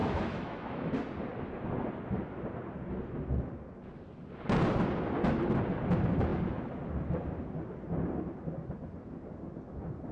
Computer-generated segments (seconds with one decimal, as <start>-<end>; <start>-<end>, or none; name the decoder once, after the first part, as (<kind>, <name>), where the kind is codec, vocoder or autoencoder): 0.0-0.9 (autoencoder, DAC-VAE)